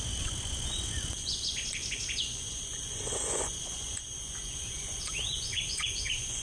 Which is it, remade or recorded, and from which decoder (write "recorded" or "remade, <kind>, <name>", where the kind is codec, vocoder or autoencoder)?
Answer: remade, vocoder, Vocos